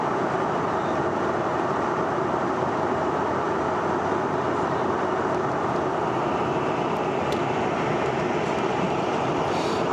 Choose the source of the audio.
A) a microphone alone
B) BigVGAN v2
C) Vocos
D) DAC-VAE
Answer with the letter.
B